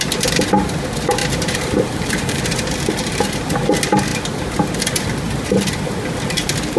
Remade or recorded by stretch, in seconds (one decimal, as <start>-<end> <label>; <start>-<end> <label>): 0.0-1.2 recorded; 1.2-2.4 remade; 2.4-6.8 recorded